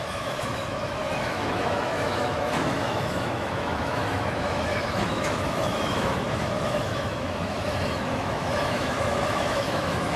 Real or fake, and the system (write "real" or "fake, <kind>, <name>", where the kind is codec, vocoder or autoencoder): fake, autoencoder, DAC-VAE